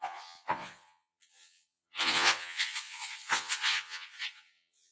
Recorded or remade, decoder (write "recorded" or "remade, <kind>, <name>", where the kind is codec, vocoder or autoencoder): remade, vocoder, Vocos